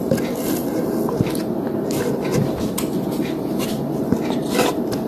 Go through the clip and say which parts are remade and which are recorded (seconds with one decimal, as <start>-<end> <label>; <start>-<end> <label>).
0.0-5.1 recorded